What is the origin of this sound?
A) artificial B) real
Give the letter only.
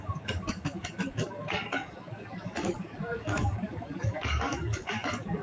A